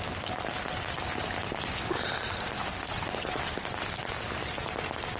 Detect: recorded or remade recorded